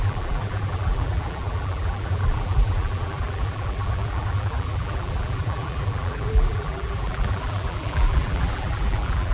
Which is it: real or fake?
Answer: fake